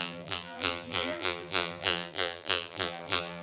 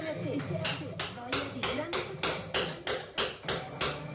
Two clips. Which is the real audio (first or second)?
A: second